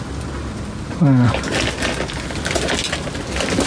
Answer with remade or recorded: recorded